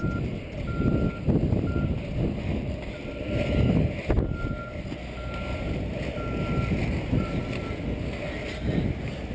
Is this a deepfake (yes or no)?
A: no